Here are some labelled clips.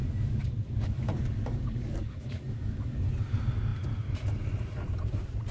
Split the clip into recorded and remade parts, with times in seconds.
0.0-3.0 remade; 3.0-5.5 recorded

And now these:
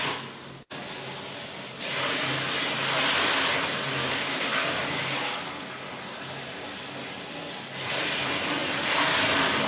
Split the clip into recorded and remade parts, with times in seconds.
0.0-4.0 recorded; 4.0-5.5 remade; 5.5-9.7 recorded

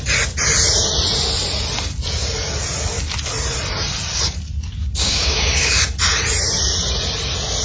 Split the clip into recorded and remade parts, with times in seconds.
0.0-4.8 recorded; 4.8-5.8 remade; 5.8-7.6 recorded

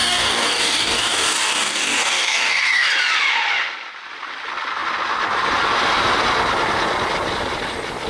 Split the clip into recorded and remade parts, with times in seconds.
0.0-2.9 remade; 2.9-8.1 recorded

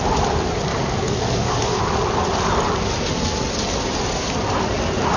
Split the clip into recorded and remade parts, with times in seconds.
0.0-0.7 recorded; 0.7-1.8 remade; 1.8-5.2 recorded